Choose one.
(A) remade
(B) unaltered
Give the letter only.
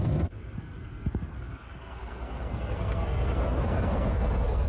A